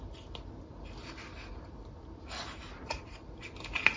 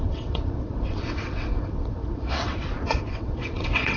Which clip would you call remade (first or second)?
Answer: second